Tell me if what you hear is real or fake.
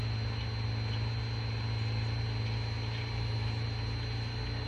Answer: real